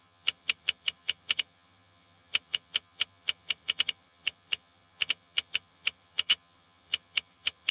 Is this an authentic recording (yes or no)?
no